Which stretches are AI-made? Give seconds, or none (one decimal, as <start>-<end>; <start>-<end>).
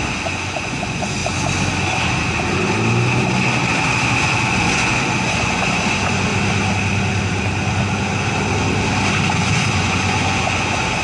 0.0-1.2; 4.2-6.3; 9.3-11.0